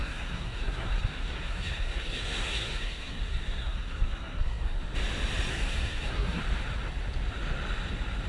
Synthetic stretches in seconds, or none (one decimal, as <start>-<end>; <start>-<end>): 0.0-4.8; 5.5-6.4